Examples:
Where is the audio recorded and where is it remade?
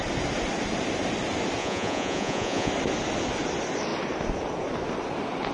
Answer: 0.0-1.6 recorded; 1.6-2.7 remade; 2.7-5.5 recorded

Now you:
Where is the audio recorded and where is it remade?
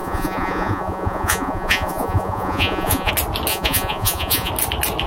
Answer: 0.0-3.1 remade; 3.1-3.5 recorded; 3.5-4.5 remade; 4.5-5.1 recorded